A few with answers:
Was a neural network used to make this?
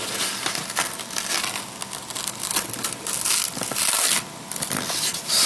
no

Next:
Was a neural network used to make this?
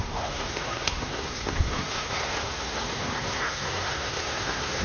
yes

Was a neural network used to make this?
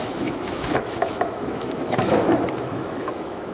yes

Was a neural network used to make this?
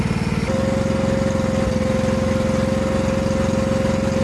no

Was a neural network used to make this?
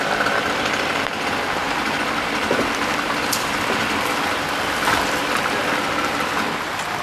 yes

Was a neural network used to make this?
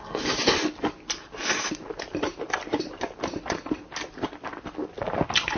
no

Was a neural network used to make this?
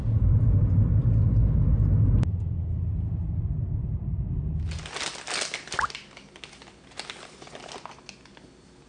no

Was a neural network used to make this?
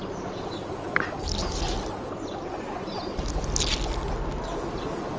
no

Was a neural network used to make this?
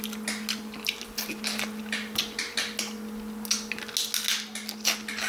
no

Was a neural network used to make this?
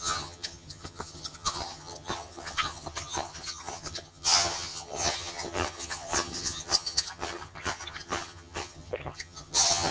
yes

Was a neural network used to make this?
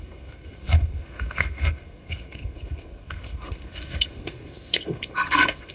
yes